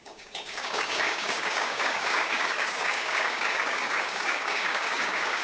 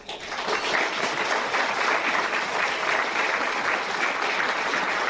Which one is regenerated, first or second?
first